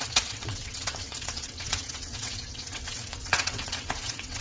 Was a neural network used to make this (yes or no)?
yes